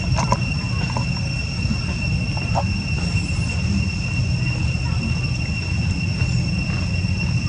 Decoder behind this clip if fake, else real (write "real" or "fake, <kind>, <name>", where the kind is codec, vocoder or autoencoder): fake, vocoder, BigVGAN v2